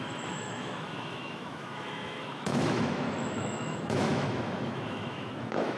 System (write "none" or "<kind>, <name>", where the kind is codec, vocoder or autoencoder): autoencoder, DAC-VAE